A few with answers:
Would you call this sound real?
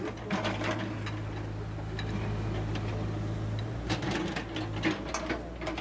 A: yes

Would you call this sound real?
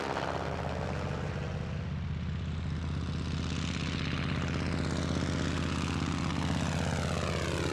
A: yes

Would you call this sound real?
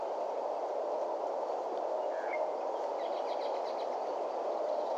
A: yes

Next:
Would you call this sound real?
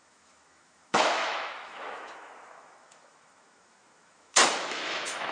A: no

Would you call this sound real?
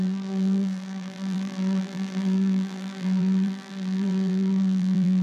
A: no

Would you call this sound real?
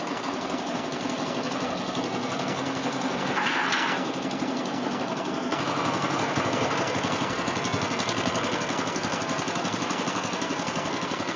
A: no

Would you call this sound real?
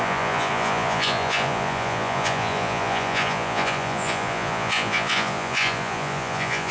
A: no